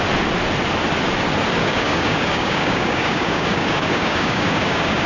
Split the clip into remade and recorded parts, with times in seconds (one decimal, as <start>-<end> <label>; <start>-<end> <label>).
0.0-1.6 recorded; 1.6-5.1 remade